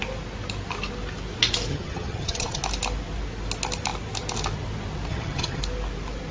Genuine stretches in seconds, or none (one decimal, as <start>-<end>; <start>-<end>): 0.0-1.7; 2.6-5.1; 5.6-6.3